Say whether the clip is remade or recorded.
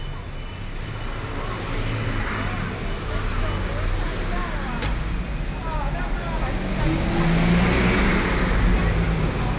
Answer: recorded